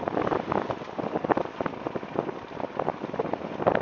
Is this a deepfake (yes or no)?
no